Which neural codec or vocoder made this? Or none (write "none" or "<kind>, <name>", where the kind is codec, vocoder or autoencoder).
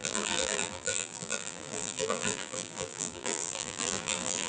vocoder, BigVGAN v2